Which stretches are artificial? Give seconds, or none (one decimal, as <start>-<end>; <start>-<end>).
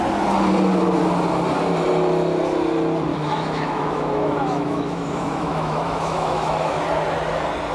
3.1-6.8